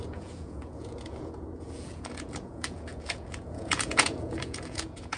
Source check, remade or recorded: remade